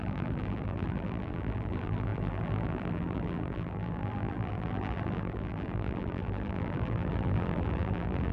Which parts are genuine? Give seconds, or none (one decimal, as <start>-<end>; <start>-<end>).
none